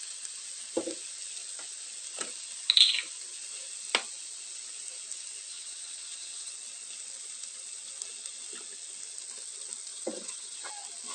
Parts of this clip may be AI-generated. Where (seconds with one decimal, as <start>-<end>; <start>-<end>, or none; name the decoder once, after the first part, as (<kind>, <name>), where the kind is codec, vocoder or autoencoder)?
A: 5.5-6.5 (vocoder, WaveNeXt); 9.9-10.7